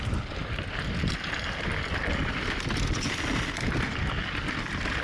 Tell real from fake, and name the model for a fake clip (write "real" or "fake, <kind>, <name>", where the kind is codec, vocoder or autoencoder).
real